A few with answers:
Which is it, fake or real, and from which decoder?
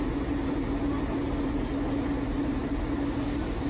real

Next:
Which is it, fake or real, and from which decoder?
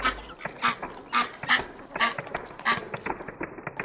real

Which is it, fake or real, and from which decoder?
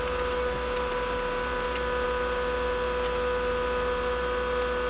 real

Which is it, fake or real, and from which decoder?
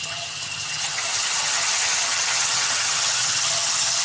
fake, vocoder, HiFi-GAN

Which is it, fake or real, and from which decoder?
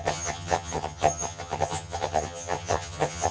fake, vocoder, HiFi-GAN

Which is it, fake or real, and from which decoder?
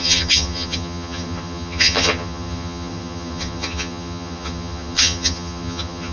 fake, vocoder, HiFi-GAN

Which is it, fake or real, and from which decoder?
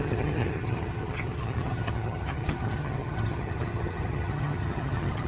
fake, vocoder, HiFi-GAN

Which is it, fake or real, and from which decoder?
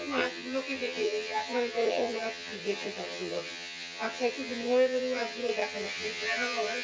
fake, vocoder, HiFi-GAN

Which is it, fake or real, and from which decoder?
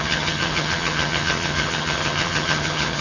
fake, vocoder, HiFi-GAN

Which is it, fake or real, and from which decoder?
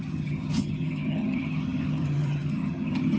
fake, vocoder, HiFi-GAN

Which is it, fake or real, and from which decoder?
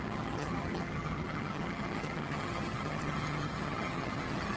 fake, vocoder, HiFi-GAN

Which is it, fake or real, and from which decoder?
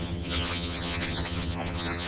fake, vocoder, HiFi-GAN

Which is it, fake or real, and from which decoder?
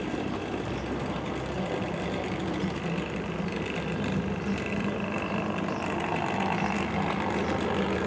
real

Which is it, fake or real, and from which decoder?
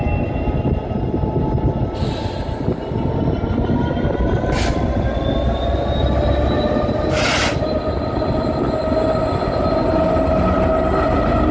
real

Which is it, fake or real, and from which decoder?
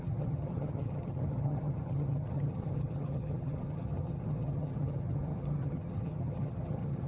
fake, vocoder, HiFi-GAN